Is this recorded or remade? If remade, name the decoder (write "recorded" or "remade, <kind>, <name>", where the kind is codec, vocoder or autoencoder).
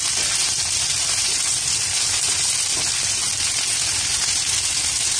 recorded